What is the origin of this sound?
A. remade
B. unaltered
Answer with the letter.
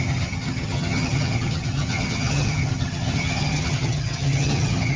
A